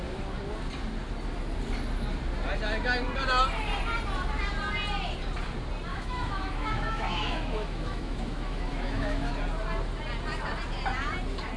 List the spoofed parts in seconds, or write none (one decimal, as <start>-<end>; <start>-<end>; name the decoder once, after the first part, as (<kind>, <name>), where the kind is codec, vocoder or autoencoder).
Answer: 5.9-9.3 (autoencoder, DAC-VAE)